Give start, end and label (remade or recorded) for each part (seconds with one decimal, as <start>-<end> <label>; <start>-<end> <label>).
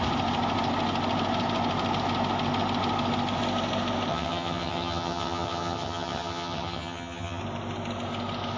0.0-4.1 recorded; 4.1-7.4 remade; 7.4-8.6 recorded